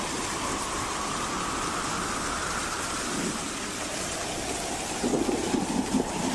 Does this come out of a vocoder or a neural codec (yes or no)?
no